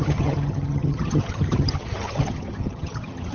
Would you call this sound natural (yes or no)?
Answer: no